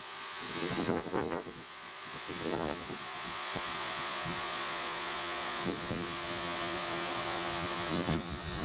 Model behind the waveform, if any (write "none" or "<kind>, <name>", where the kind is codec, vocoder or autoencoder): vocoder, Vocos